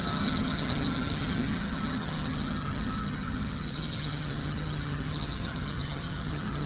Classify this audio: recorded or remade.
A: remade